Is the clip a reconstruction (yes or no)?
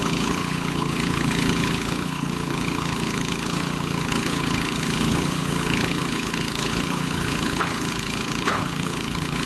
yes